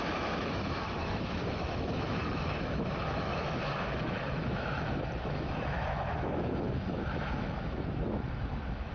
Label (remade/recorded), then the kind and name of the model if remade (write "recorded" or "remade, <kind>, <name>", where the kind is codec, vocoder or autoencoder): remade, autoencoder, DAC-VAE